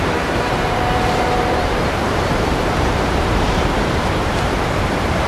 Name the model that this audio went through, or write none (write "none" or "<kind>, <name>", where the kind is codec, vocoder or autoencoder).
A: vocoder, BigVGAN v2